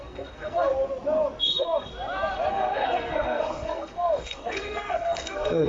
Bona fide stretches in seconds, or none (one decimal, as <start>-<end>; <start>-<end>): 0.7-1.4; 1.9-2.5